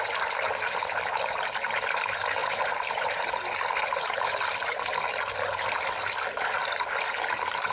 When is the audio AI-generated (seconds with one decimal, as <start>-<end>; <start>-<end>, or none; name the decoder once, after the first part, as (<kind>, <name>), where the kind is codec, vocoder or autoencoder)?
2.4-3.3 (vocoder, BigVGAN v2)